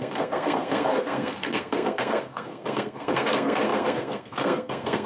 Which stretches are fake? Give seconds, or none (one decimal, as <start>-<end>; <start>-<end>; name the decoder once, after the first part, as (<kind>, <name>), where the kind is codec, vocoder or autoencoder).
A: 0.0-5.1 (codec, SNAC)